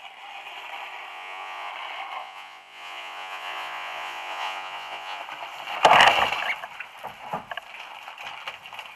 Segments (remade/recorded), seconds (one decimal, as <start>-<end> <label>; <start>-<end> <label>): 0.0-1.1 recorded; 1.1-1.7 remade; 1.7-2.2 recorded; 2.2-5.2 remade; 5.2-9.0 recorded